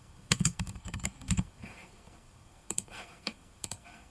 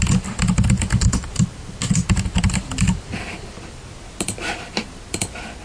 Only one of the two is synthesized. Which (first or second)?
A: first